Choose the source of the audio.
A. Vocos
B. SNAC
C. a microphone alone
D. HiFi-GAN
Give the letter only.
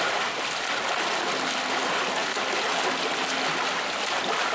C